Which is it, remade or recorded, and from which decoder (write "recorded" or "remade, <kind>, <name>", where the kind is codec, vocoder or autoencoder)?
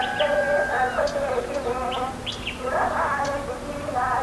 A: recorded